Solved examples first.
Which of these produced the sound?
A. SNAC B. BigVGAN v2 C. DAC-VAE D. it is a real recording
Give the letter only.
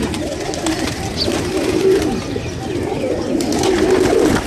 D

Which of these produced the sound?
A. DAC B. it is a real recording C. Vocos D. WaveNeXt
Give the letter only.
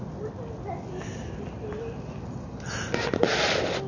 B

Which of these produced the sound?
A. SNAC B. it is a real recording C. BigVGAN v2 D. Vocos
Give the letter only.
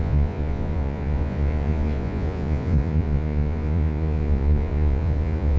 D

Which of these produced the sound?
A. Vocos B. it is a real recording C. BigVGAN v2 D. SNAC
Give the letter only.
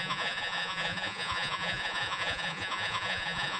A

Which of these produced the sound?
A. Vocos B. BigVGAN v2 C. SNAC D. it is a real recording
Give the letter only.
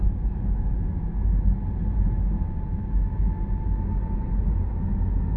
D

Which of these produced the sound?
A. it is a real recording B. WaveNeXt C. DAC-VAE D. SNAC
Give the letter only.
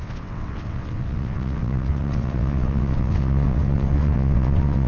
B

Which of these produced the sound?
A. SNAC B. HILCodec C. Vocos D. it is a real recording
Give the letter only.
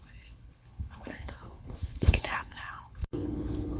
B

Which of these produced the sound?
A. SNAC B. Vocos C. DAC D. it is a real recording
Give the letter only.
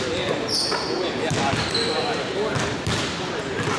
D